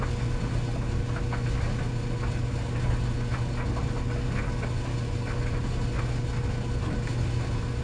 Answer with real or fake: real